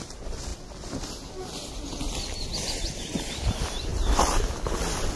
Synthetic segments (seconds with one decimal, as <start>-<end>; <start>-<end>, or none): none